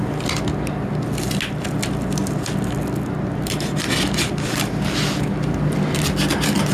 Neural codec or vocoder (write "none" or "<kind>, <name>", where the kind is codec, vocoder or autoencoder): none